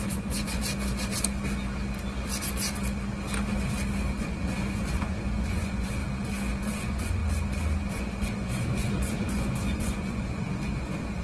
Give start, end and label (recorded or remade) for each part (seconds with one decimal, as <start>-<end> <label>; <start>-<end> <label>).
0.0-0.6 remade; 0.6-4.2 recorded; 4.2-6.0 remade; 6.0-6.6 recorded; 6.6-7.2 remade; 7.2-7.9 recorded; 7.9-11.2 remade